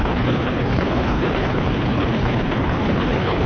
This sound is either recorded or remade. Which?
remade